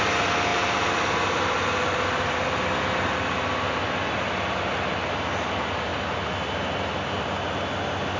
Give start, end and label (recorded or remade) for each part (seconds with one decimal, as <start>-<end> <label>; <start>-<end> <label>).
0.0-8.2 recorded